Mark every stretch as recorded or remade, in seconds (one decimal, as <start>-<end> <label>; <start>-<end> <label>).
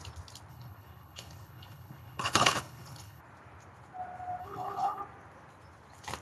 0.0-0.5 recorded; 0.5-3.2 remade; 3.2-4.4 recorded; 4.4-5.0 remade; 5.0-6.2 recorded